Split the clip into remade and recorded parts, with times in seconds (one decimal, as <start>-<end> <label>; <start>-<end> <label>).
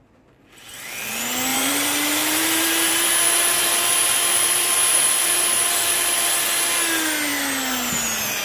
0.0-1.5 recorded; 1.5-6.3 remade; 6.3-8.4 recorded